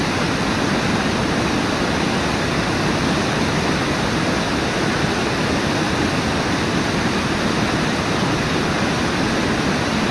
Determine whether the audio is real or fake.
real